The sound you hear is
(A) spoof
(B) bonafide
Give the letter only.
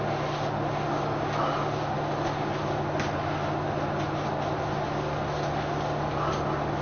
B